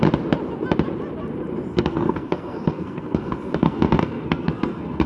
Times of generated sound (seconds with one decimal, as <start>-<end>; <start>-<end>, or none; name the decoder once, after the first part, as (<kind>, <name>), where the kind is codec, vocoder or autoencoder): 1.7-5.1 (codec, SNAC)

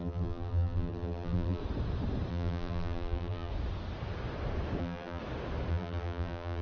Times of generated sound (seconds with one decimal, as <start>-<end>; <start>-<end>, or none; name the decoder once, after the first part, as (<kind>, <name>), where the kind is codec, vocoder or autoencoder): 0.0-1.6 (vocoder, BigVGAN v2); 2.3-3.5; 4.8-5.2; 5.7-6.6

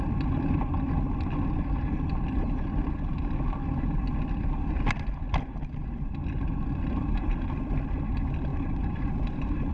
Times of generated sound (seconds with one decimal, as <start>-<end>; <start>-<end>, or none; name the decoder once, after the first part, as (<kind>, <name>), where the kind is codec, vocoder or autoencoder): 8.5-9.7 (vocoder, BigVGAN v2)

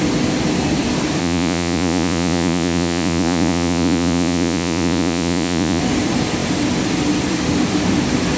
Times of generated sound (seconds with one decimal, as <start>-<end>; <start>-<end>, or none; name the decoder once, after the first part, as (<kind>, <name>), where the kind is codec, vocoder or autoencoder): 1.2-5.8 (vocoder, Vocos)

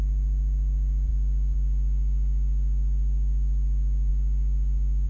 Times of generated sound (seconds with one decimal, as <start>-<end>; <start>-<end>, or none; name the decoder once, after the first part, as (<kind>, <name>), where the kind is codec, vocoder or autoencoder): none

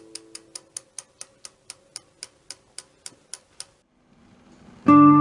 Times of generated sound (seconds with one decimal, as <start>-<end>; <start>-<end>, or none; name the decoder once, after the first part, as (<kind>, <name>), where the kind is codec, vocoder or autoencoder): none

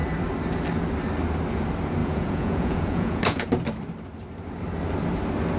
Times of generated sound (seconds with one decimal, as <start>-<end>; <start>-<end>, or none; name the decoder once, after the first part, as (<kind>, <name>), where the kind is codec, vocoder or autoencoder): 2.0-3.5 (vocoder, Vocos)

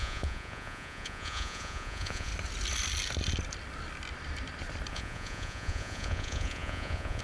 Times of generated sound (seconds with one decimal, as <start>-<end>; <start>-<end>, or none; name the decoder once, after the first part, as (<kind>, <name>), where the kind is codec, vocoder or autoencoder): 0.0-2.3 (vocoder, Vocos); 4.9-7.2